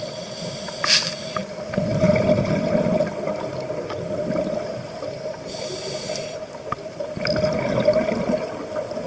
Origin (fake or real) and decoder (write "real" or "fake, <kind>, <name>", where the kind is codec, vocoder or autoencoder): real